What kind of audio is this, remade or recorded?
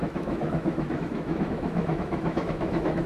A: remade